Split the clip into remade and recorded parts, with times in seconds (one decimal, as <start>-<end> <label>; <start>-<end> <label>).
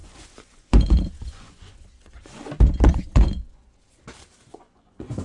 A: 0.0-2.5 remade; 2.5-2.9 recorded; 2.9-4.0 remade; 4.0-4.5 recorded; 4.5-5.2 remade